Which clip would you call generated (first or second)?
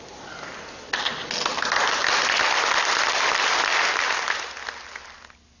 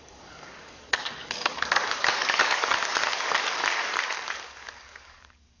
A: second